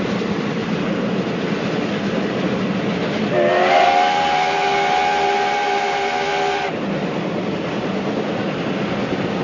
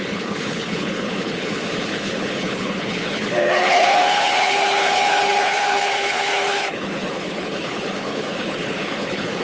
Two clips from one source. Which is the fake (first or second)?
second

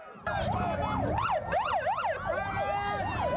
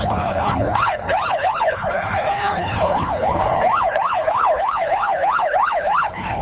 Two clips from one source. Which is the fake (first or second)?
second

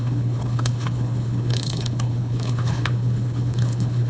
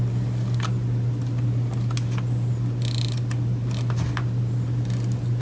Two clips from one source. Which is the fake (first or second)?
first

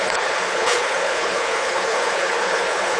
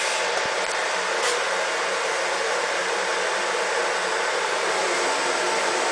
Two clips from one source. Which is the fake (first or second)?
first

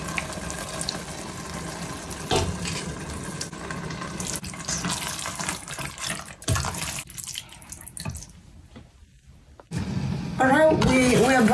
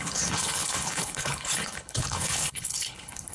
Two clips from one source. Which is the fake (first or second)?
second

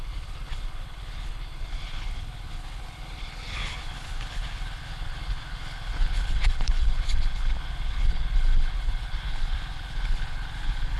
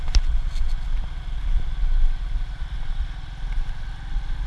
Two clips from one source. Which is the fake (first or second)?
first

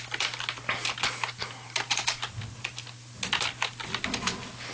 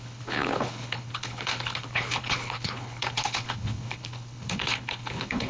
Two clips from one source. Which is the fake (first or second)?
second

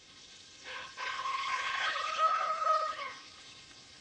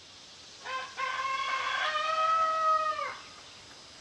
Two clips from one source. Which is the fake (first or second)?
first